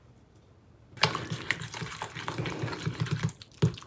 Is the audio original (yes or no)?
yes